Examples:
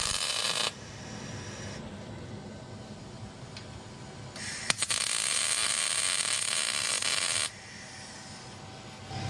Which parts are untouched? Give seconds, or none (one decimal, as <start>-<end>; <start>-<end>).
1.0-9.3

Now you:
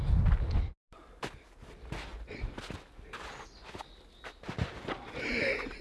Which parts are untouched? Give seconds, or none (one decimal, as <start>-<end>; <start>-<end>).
0.0-5.8

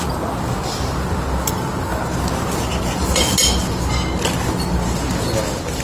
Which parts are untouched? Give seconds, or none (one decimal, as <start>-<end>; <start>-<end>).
0.0-5.8

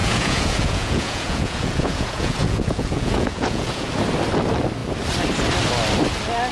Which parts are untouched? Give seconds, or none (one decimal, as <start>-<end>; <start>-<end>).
3.9-6.5